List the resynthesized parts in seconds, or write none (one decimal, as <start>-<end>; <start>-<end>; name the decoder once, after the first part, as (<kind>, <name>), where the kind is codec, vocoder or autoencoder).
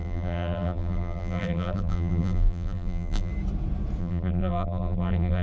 0.0-3.3 (vocoder, BigVGAN v2); 4.0-5.4